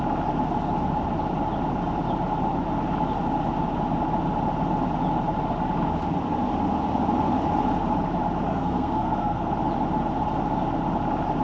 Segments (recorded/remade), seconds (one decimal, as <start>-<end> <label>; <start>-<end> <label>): 0.0-8.5 recorded; 8.5-9.5 remade; 9.5-11.4 recorded